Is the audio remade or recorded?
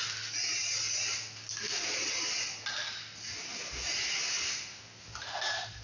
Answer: recorded